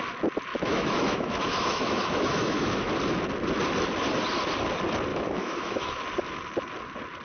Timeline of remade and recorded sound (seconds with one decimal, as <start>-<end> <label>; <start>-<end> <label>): 0.0-0.5 recorded; 0.5-2.9 remade; 2.9-5.1 recorded; 5.1-6.0 remade; 6.0-7.2 recorded